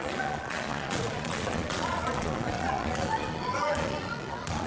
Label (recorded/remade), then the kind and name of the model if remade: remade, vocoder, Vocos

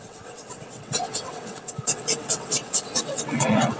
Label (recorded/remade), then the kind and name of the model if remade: remade, vocoder, WaveNeXt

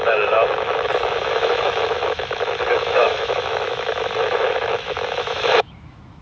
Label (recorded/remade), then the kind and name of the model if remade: remade, autoencoder, DAC-VAE